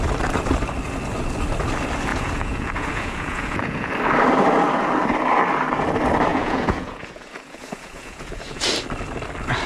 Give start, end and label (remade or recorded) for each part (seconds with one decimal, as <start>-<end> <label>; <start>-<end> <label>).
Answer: 0.0-2.1 recorded; 2.1-3.9 remade; 3.9-6.3 recorded; 6.3-8.6 remade; 8.6-9.7 recorded